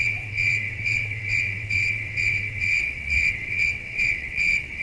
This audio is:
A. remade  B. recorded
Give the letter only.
A